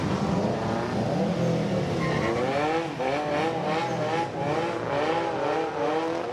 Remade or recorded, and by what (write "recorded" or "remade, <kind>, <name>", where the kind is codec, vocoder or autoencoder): recorded